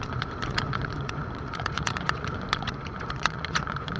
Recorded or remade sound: remade